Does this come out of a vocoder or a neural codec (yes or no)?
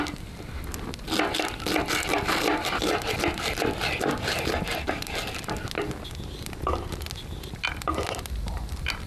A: no